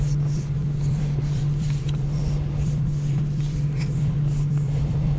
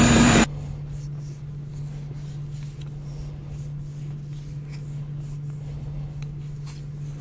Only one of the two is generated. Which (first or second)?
first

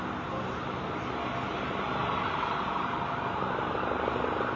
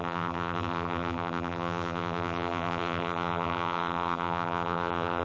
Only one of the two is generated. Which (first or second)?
second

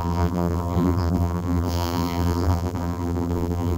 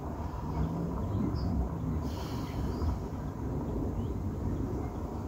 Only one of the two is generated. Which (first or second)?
first